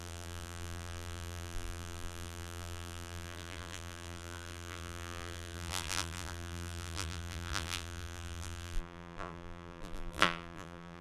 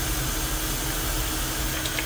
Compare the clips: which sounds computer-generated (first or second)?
first